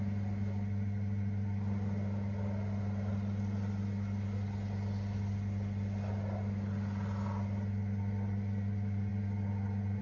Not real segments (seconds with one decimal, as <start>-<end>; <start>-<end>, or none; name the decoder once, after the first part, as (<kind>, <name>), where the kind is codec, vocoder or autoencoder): none